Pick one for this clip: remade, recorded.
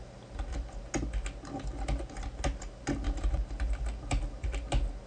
recorded